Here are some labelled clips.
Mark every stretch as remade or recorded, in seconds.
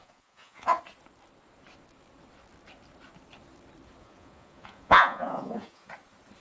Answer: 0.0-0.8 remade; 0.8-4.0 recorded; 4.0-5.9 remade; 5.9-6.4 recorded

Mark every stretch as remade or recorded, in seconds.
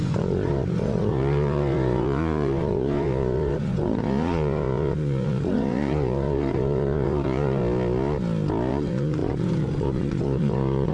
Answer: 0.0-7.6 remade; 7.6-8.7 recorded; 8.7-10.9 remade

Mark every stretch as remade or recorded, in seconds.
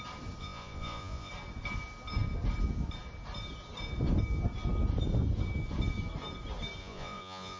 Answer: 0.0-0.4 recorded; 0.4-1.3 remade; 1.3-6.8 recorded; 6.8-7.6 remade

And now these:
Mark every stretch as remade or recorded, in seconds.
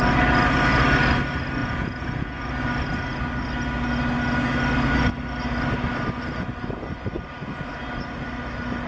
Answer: 0.0-1.6 recorded; 1.6-2.4 remade; 2.4-8.9 recorded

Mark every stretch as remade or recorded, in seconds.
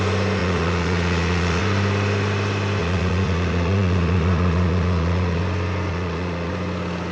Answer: 0.0-0.4 recorded; 0.4-1.6 remade; 1.6-2.8 recorded; 2.8-5.4 remade; 5.4-5.9 recorded; 5.9-6.5 remade; 6.5-7.1 recorded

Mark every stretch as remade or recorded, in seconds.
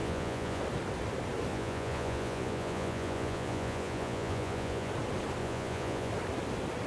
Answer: 0.0-0.6 remade; 0.6-1.5 recorded; 1.5-4.9 remade; 4.9-5.4 recorded; 5.4-6.1 remade; 6.1-6.9 recorded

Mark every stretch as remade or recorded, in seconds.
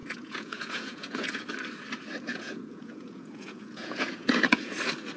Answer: 0.0-1.5 remade; 1.5-2.3 recorded; 2.3-4.7 remade; 4.7-5.2 recorded